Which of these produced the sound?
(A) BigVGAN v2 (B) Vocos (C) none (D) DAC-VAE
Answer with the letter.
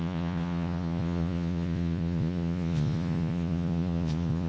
B